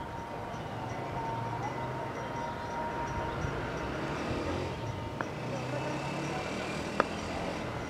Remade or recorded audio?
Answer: recorded